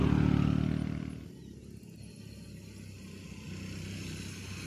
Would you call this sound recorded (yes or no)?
yes